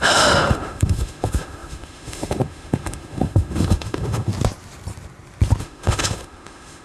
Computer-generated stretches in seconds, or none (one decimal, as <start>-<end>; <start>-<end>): 0.0-4.3; 5.6-6.8